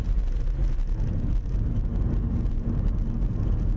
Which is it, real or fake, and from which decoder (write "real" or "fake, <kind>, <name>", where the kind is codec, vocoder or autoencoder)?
real